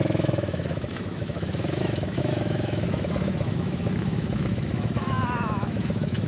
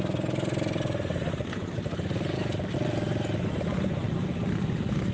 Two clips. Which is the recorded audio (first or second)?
second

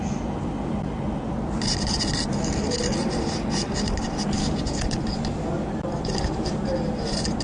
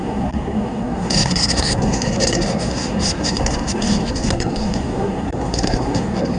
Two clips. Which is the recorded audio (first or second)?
first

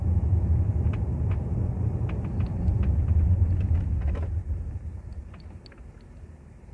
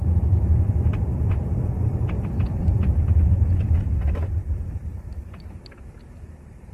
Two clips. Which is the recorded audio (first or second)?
first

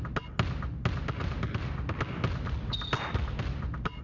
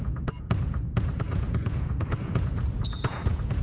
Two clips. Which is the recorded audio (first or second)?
first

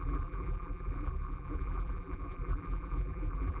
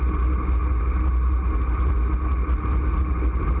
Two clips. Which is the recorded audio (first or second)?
second